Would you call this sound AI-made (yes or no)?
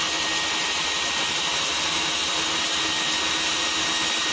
no